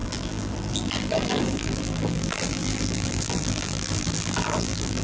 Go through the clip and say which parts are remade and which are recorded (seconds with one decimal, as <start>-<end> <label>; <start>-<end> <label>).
0.0-5.0 remade